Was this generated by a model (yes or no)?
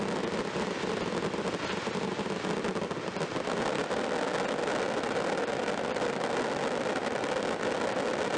no